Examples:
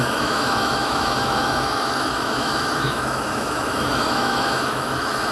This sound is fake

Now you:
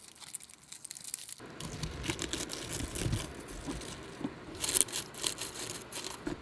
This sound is real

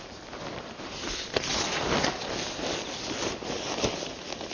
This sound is real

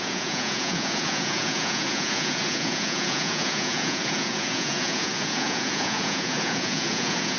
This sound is fake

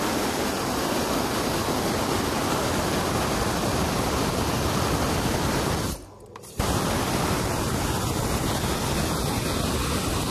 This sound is real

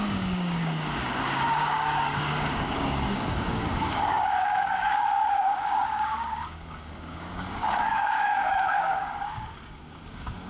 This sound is fake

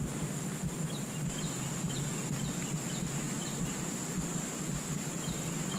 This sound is real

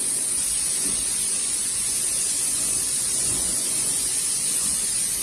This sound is fake